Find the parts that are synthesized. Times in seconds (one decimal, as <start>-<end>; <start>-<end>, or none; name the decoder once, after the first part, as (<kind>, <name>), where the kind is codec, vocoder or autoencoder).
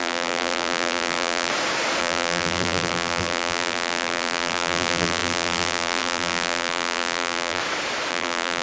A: 0.0-1.5 (vocoder, BigVGAN v2); 2.0-7.6; 8.1-8.6